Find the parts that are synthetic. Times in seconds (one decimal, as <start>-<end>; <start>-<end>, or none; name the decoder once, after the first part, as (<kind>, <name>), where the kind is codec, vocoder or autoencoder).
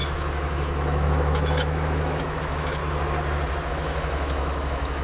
0.0-2.8 (autoencoder, DAC-VAE); 3.7-5.0